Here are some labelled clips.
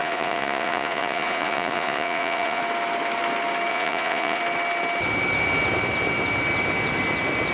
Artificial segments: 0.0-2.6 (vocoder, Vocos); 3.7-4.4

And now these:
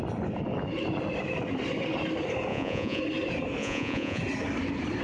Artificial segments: 2.5-3.0 (vocoder, Vocos); 3.6-4.2

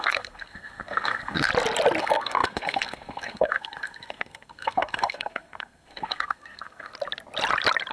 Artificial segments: 0.0-1.5 (codec, SNAC); 2.0-6.9

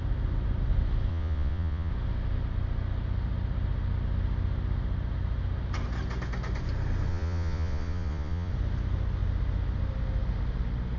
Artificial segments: 1.1-1.9 (vocoder, Vocos); 7.1-8.5

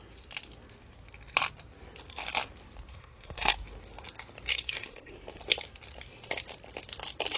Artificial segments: 2.9-3.5 (codec, SNAC); 4.5-5.1

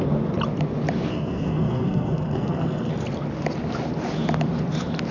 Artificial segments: 1.1-2.9 (codec, SNAC)